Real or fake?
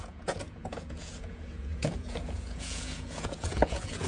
fake